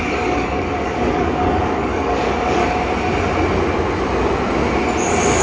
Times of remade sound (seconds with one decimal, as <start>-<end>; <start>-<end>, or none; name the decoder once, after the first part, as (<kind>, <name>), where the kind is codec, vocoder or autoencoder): 0.0-2.6 (codec, DAC)